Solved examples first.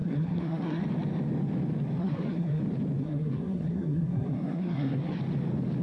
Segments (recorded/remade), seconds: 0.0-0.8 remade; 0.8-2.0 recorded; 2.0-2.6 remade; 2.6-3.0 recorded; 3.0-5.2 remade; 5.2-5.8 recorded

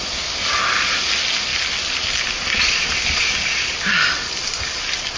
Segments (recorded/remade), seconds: 0.0-5.2 recorded